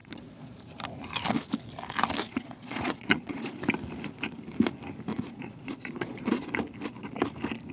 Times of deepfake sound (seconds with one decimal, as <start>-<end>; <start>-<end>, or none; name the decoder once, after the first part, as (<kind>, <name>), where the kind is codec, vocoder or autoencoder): 0.0-0.6 (vocoder, Vocos); 2.2-3.7; 5.1-6.4